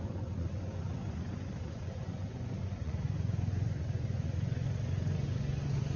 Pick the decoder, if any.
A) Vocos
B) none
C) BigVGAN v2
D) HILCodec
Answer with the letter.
A